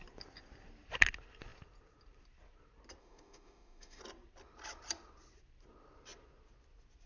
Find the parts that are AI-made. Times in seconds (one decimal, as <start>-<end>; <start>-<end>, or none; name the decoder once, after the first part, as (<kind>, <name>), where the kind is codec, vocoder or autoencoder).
3.0-4.0 (autoencoder, DAC-VAE)